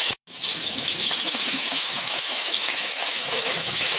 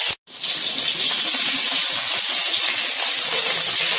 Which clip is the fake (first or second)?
first